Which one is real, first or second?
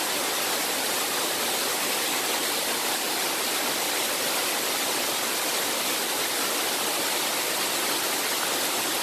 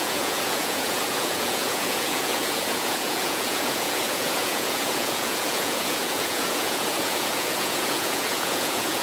first